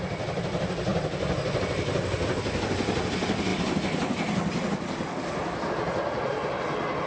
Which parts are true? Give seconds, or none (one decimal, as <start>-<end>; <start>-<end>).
0.0-7.1